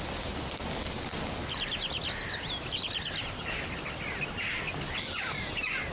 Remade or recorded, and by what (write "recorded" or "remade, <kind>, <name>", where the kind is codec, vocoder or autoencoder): recorded